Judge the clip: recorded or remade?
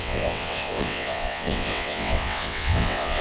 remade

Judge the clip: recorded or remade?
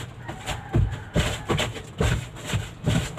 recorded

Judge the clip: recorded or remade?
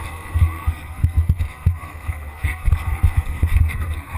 remade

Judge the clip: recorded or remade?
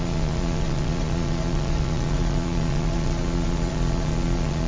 remade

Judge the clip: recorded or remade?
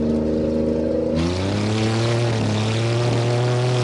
recorded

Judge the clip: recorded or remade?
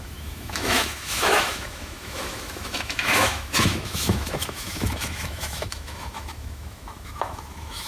remade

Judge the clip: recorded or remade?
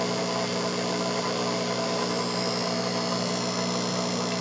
recorded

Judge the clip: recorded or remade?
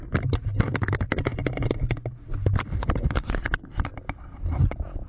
recorded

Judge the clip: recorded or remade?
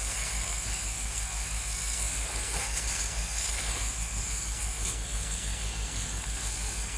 remade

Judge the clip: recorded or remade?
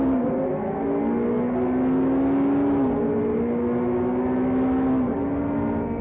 recorded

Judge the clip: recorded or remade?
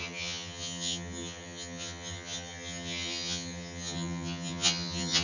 remade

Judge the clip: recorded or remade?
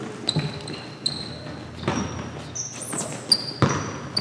recorded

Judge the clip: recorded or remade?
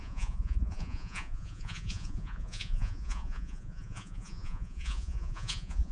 remade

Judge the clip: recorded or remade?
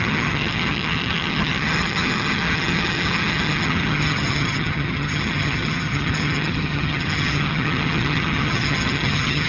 remade